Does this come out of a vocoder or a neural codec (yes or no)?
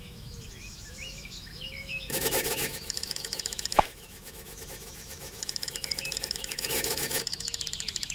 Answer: yes